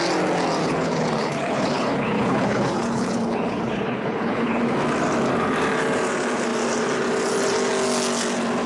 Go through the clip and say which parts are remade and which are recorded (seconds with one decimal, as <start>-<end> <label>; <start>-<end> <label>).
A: 0.0-0.6 recorded; 0.6-4.6 remade; 4.6-8.7 recorded